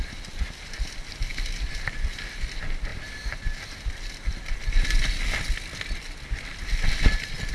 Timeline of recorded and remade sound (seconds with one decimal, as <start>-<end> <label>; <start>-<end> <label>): 0.0-7.5 recorded